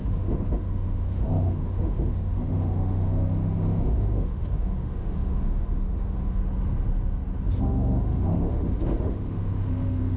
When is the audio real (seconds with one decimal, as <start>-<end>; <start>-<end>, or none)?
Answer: 6.4-7.6